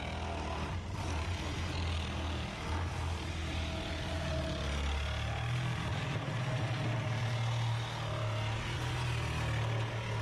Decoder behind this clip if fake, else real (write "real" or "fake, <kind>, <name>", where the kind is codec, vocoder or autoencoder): real